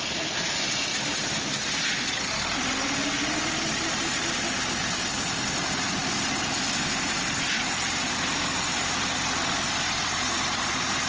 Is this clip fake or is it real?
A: real